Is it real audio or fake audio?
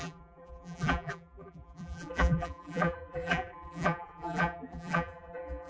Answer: fake